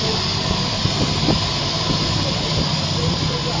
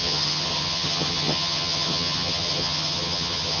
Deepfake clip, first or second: second